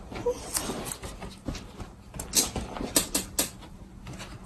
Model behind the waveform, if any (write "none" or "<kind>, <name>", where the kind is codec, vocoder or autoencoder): none